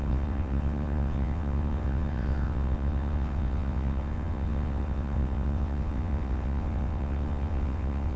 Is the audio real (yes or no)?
no